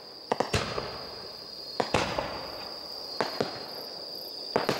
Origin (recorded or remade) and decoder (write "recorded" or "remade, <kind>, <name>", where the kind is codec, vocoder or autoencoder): recorded